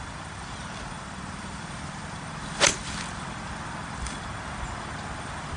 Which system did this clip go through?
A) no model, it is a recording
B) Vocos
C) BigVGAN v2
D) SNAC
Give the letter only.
C